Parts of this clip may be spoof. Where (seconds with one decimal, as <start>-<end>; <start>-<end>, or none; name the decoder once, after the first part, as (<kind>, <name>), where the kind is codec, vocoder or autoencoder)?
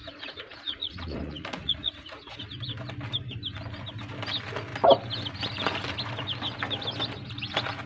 0.0-2.4 (vocoder, Vocos)